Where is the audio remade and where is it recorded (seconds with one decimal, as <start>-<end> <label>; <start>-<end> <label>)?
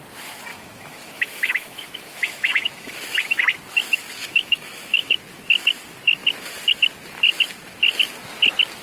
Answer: 0.0-0.5 recorded; 0.5-3.4 remade; 3.4-4.2 recorded; 4.2-5.2 remade; 5.2-8.8 recorded